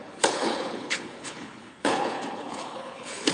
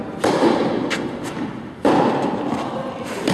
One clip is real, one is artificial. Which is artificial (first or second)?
first